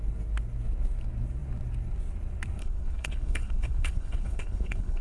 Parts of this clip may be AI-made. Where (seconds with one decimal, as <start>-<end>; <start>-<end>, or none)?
2.6-5.0